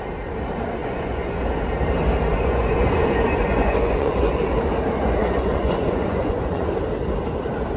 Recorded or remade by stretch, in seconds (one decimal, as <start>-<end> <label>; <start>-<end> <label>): 0.0-0.8 recorded; 0.8-1.4 remade; 1.4-2.3 recorded; 2.3-4.4 remade; 4.4-5.2 recorded; 5.2-6.7 remade; 6.7-7.8 recorded